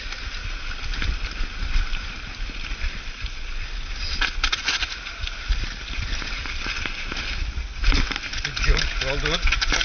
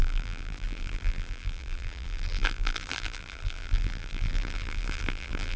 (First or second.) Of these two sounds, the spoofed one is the second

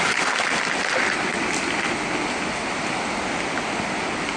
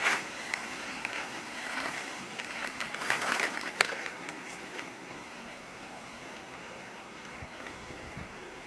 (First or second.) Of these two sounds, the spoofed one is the second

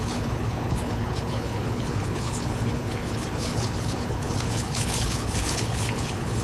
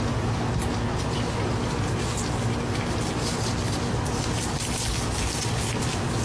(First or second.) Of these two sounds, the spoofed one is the first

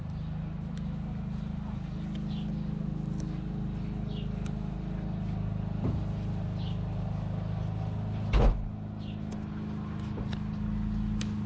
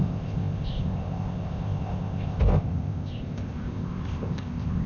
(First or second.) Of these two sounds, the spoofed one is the second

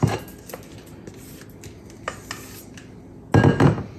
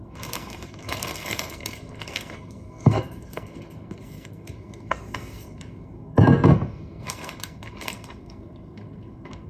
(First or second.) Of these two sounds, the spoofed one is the second